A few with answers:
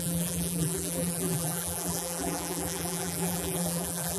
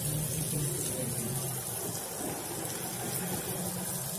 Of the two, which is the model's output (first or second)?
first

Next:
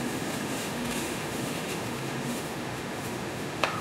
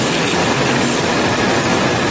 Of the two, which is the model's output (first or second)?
first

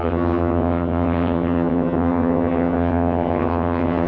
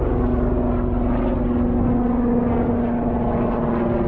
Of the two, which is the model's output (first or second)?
first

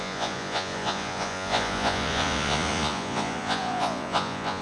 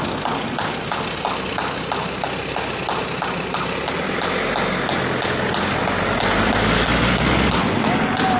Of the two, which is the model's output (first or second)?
first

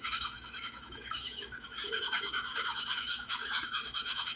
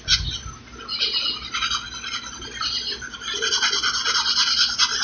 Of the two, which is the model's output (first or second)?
first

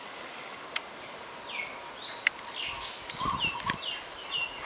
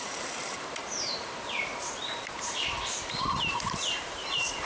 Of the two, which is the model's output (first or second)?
second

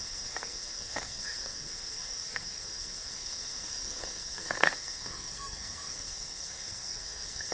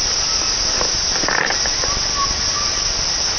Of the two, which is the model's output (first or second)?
first